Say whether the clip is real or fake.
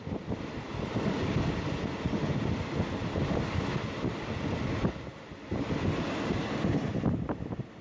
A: real